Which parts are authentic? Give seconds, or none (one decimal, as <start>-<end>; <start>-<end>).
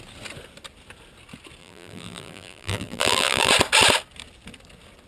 0.0-1.6; 3.5-5.1